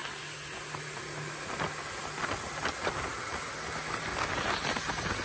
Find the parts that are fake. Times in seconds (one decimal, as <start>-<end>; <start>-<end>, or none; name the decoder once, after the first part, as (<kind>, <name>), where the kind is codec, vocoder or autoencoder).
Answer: none